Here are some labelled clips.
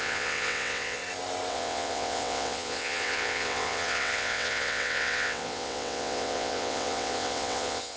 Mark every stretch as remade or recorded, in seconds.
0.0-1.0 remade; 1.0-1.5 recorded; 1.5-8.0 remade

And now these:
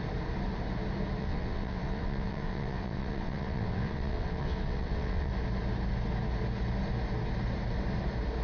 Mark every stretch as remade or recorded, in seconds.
0.0-1.2 recorded; 1.2-5.3 remade; 5.3-8.4 recorded